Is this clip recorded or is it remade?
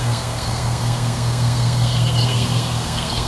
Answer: remade